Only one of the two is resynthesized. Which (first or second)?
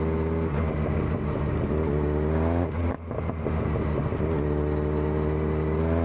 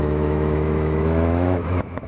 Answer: second